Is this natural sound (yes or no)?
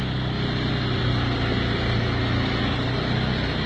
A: yes